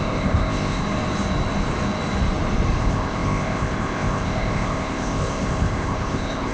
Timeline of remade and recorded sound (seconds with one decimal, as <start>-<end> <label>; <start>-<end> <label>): 0.0-0.8 remade; 0.8-2.8 recorded; 2.8-6.5 remade